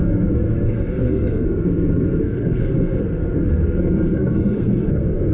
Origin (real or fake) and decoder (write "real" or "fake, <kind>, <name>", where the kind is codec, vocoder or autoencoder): fake, codec, SNAC